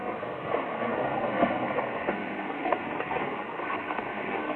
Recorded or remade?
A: remade